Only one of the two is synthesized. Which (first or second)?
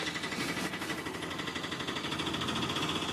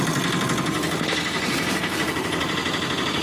second